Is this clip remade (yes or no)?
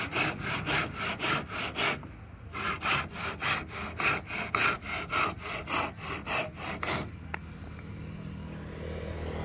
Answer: no